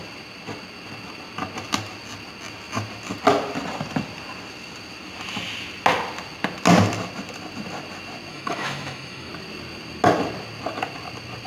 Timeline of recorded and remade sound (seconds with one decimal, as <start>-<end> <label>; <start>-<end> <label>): 0.0-8.3 recorded; 8.3-9.3 remade; 9.3-11.5 recorded